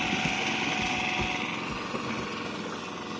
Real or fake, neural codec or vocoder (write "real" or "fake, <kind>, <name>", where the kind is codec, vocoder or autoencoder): real